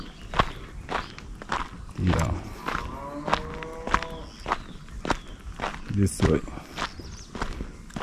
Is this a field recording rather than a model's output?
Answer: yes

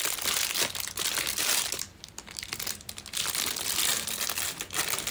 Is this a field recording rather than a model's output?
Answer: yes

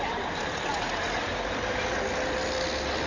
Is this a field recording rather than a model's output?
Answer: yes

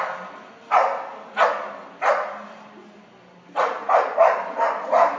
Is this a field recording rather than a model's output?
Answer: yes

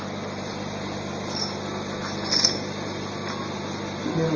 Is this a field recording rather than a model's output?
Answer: yes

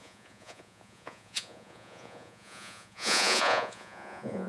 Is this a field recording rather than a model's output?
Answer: no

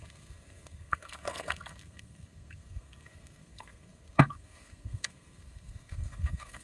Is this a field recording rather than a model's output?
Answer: no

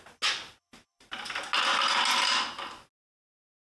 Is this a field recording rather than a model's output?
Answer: yes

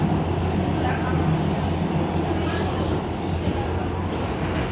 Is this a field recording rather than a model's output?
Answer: yes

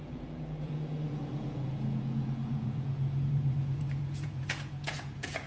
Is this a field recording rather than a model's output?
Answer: no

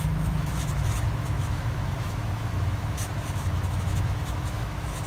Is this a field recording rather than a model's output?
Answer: no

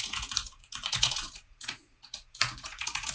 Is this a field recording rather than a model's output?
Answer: no